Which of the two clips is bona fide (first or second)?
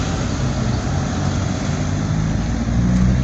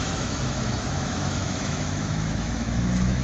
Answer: first